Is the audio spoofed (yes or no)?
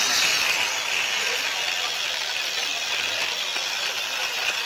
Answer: no